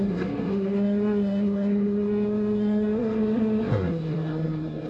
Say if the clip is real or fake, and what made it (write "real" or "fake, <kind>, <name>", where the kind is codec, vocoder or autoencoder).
fake, codec, SNAC